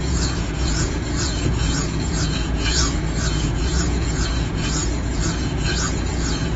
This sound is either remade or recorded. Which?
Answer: remade